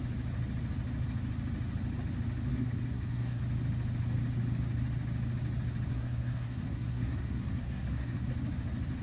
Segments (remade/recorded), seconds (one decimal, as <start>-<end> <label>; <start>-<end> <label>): 0.0-2.5 recorded; 2.5-3.4 remade; 3.4-5.9 recorded; 5.9-8.3 remade; 8.3-9.0 recorded

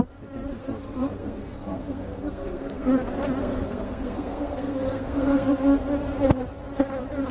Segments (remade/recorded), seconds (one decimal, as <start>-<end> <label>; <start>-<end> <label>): 0.0-0.6 recorded; 0.6-2.9 remade; 2.9-3.4 recorded; 3.4-5.8 remade; 5.8-7.3 recorded

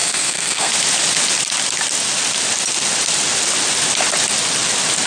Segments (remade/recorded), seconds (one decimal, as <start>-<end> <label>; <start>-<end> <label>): 0.0-0.7 remade; 0.7-5.1 recorded

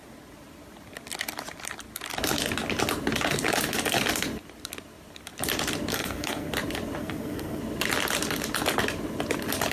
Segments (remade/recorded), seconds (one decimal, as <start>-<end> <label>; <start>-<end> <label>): 0.0-5.9 recorded; 5.9-6.5 remade; 6.5-7.0 recorded; 7.0-7.6 remade; 7.6-9.7 recorded

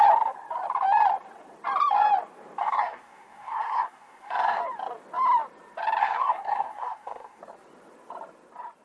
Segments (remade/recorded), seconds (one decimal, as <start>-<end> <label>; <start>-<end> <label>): 0.0-2.6 recorded; 2.6-4.6 remade; 4.6-6.0 recorded; 6.0-7.4 remade; 7.4-8.8 recorded